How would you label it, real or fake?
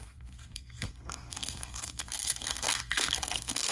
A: fake